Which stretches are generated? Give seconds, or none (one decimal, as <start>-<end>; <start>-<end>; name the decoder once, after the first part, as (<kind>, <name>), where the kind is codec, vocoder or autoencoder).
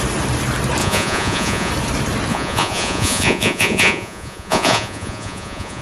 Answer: 0.8-1.7 (vocoder, Vocos); 2.3-5.8